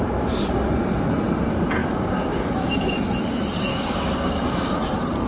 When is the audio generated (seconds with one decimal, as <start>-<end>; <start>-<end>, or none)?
1.8-2.9; 3.7-4.7